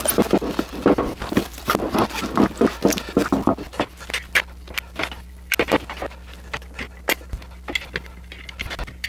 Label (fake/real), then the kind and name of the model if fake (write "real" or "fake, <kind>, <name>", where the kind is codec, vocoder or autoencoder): real